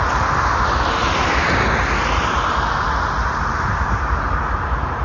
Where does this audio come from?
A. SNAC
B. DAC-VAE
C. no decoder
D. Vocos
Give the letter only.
C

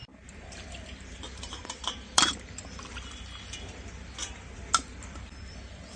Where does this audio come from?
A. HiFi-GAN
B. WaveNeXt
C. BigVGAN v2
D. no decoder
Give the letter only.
C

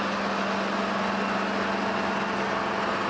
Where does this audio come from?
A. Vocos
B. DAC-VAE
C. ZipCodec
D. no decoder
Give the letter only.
D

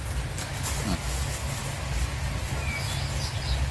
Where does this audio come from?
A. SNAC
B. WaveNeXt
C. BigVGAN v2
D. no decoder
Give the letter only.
D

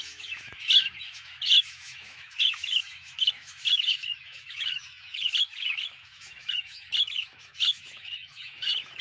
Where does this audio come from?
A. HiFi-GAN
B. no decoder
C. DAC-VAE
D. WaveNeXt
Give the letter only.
C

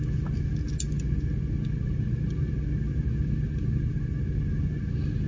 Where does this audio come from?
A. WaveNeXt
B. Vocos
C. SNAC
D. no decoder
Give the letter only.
D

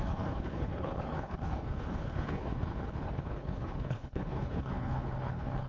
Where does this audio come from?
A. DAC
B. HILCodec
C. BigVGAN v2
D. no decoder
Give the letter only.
B